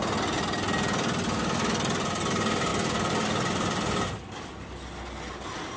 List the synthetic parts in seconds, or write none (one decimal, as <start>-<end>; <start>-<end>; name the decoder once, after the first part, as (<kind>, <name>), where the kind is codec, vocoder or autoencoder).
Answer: none